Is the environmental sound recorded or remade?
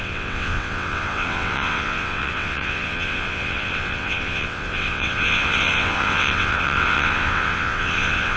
remade